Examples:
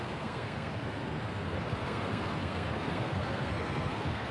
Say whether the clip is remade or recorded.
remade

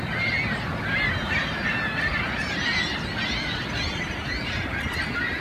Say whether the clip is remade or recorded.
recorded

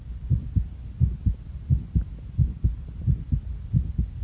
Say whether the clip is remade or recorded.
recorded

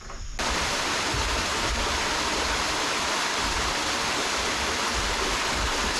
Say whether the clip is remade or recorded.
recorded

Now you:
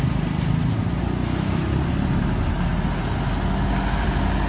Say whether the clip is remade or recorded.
recorded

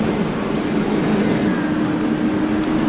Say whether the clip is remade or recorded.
recorded